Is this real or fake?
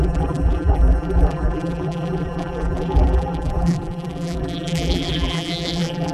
fake